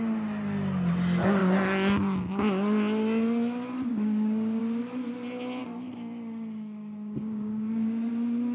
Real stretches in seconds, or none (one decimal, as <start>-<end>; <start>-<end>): 0.0-3.9; 4.6-5.6; 8.1-8.5